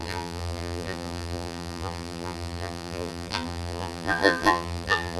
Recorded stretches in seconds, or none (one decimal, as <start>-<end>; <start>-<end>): none